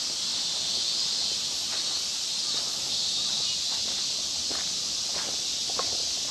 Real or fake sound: real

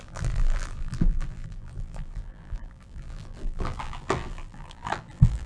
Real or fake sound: fake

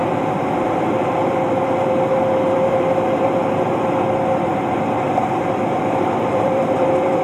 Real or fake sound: fake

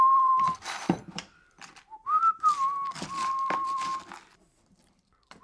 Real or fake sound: fake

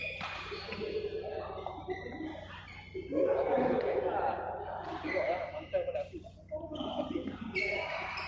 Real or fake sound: real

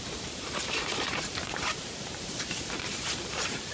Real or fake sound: fake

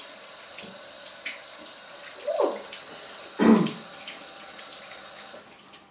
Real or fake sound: fake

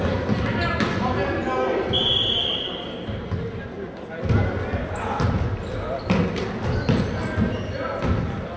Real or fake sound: real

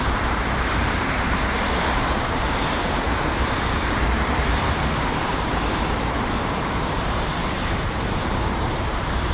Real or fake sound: fake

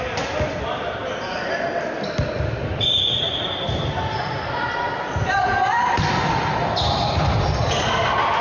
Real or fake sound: fake